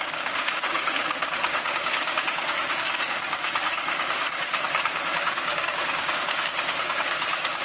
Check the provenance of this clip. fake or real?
fake